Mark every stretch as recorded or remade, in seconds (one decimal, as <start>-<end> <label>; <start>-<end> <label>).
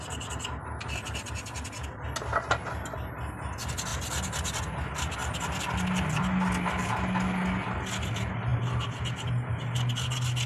0.0-10.5 recorded